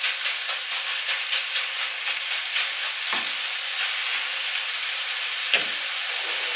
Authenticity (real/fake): real